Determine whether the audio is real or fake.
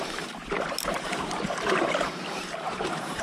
fake